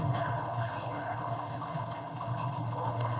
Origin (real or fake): fake